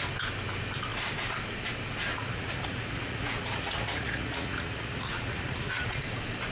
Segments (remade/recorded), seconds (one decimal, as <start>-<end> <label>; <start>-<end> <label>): 0.0-2.1 recorded; 2.1-6.0 remade; 6.0-6.5 recorded